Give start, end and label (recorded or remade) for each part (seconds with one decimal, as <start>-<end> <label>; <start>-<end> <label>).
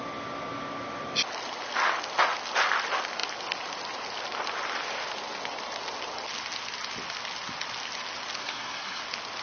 0.0-8.4 recorded; 8.4-9.0 remade; 9.0-9.4 recorded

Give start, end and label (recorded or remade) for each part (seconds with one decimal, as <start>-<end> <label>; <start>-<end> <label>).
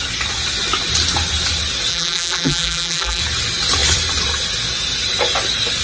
0.0-1.9 recorded; 1.9-3.2 remade; 3.2-5.8 recorded